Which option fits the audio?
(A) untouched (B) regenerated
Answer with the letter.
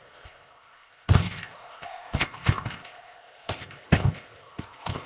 B